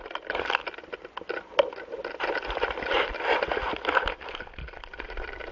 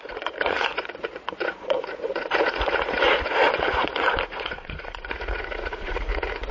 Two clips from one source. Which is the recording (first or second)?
first